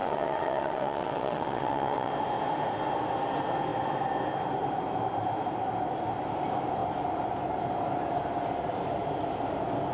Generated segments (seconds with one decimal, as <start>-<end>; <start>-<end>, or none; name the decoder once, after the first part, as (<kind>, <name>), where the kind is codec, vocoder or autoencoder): 0.0-2.1 (vocoder, WaveNeXt)